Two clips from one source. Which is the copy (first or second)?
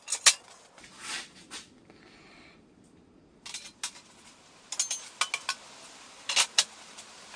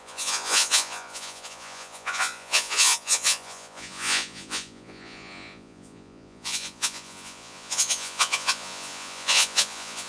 second